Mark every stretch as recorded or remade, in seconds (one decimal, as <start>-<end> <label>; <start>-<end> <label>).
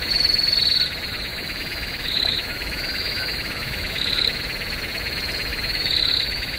0.0-1.3 recorded; 1.3-4.4 remade; 4.4-5.5 recorded; 5.5-6.6 remade